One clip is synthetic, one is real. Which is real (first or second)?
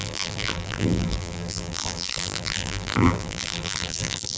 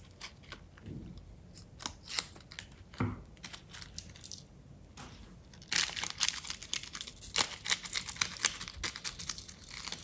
second